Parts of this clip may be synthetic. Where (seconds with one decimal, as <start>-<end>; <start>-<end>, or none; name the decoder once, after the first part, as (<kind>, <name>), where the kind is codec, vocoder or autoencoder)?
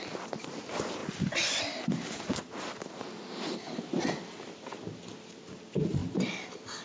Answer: none